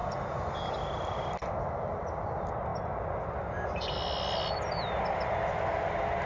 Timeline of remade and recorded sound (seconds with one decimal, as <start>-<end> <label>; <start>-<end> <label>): 0.0-6.3 recorded

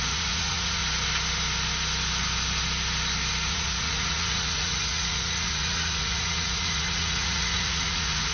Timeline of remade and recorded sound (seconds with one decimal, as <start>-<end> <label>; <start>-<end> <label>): 0.0-0.8 remade; 0.8-3.5 recorded; 3.5-8.3 remade

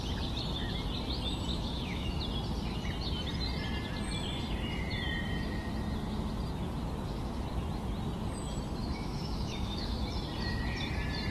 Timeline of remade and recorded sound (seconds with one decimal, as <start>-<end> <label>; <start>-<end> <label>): 0.0-1.5 recorded; 1.5-2.1 remade; 2.1-8.8 recorded; 8.8-10.1 remade; 10.1-11.3 recorded

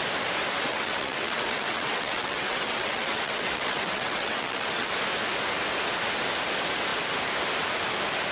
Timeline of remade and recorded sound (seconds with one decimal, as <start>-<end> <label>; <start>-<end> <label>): 0.0-0.7 recorded; 0.7-4.9 remade; 4.9-8.3 recorded

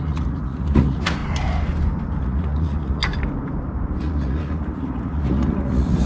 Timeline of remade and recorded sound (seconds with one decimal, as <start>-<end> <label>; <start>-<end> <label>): 0.0-1.2 remade; 1.2-2.2 recorded; 2.2-3.0 remade; 3.0-4.0 recorded; 4.0-6.1 remade